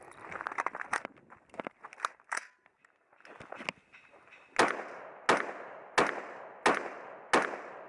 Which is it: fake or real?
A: real